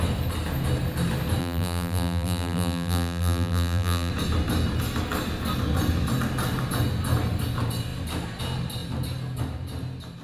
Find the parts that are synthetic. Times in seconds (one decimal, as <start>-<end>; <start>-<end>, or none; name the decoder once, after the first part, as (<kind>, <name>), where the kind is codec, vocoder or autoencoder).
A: 1.4-4.1 (vocoder, BigVGAN v2)